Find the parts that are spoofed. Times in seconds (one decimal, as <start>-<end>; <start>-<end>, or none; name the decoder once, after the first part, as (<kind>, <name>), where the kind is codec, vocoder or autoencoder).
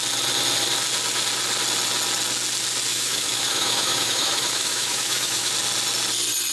2.9-5.5 (autoencoder, DAC-VAE)